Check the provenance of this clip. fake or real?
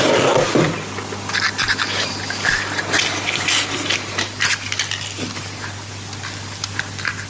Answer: real